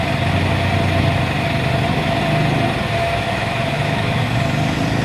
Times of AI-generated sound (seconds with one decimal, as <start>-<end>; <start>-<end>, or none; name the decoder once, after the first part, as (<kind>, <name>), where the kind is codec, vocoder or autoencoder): 3.0-4.2 (autoencoder, DAC-VAE)